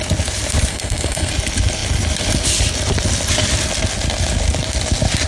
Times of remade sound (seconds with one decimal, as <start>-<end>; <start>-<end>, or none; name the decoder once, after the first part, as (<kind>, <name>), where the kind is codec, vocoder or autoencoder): 0.7-1.3 (codec, SNAC)

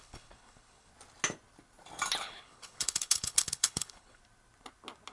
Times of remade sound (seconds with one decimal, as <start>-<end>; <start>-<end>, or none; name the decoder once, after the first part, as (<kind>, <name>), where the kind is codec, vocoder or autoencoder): 0.0-0.9 (codec, HILCodec); 2.2-4.2